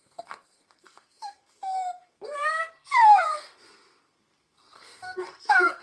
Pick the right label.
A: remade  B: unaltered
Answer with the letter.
A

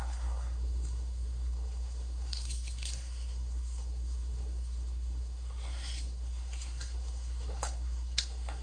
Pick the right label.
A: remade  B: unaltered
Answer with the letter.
A